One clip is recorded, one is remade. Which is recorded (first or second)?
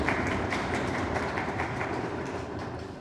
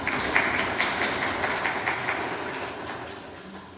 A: second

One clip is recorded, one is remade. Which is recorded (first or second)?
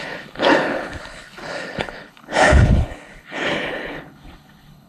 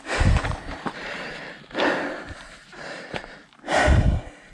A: second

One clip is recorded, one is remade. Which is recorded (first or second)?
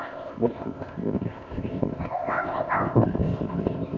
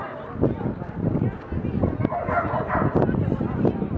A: second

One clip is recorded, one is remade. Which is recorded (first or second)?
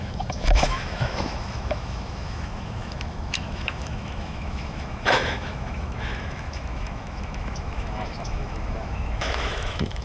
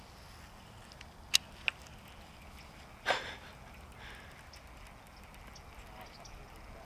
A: second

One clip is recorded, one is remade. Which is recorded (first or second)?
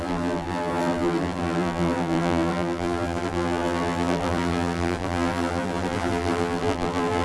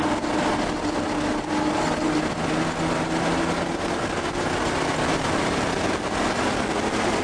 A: second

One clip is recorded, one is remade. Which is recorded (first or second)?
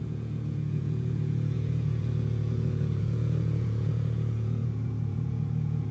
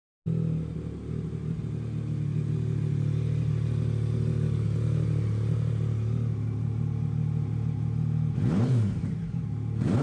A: second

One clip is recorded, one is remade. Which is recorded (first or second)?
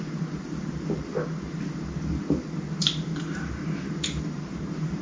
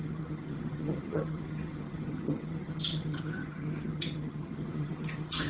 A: first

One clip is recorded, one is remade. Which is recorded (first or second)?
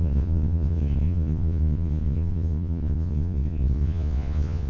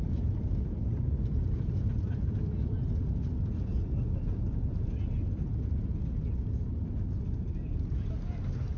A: second